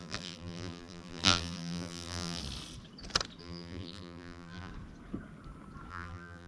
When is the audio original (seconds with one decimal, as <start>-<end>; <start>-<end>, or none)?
2.4-3.4; 4.7-5.9